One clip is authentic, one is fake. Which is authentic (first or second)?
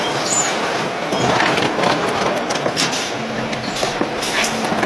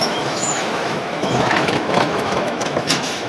first